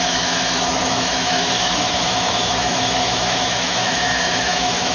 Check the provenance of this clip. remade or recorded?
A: remade